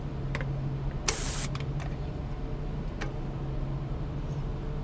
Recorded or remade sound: recorded